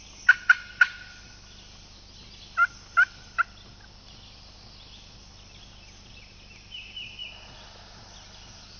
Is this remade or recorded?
recorded